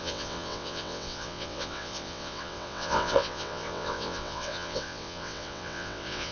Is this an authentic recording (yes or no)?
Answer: no